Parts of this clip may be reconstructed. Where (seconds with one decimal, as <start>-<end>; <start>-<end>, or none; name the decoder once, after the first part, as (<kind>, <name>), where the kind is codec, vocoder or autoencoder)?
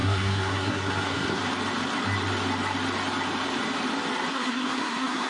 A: 0.0-1.4 (codec, SNAC); 4.3-5.3